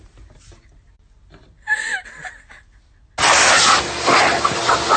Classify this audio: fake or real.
real